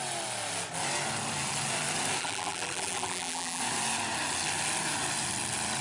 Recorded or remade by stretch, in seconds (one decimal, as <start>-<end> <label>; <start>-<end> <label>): 0.0-2.2 recorded; 2.2-3.6 remade; 3.6-5.8 recorded